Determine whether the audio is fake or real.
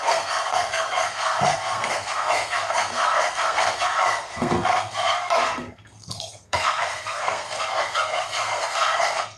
fake